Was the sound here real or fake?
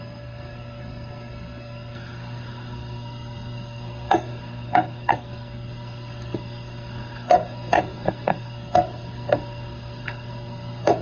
fake